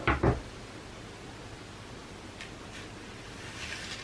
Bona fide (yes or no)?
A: yes